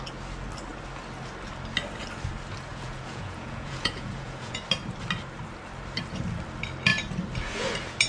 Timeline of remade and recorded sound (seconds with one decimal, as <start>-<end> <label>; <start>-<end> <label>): 0.0-2.7 recorded; 2.7-4.6 remade; 4.6-8.1 recorded